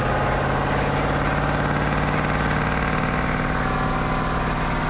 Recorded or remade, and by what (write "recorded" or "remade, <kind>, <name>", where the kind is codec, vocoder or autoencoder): recorded